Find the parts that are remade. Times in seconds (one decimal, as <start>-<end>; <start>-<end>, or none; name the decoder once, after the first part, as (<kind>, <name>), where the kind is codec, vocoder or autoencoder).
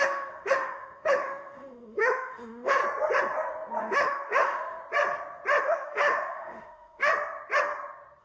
0.0-2.8 (autoencoder, DAC-VAE); 3.8-4.8; 5.6-7.1